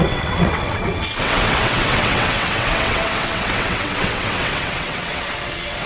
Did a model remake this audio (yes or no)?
yes